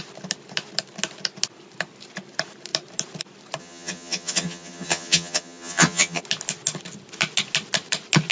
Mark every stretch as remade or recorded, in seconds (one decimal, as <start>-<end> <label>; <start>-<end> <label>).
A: 0.0-3.6 recorded; 3.6-6.2 remade; 6.2-8.3 recorded